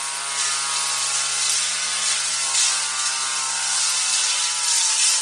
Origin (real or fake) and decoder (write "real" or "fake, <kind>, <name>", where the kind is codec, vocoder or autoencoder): real